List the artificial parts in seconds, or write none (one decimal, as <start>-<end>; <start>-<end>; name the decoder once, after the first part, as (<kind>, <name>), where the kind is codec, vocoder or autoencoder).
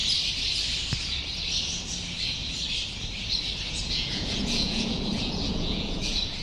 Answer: 3.7-6.4 (vocoder, Vocos)